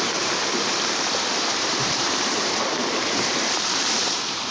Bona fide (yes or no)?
no